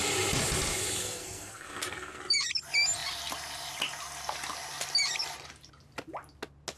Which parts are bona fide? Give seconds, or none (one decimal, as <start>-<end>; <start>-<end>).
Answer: 0.0-1.0; 2.2-6.8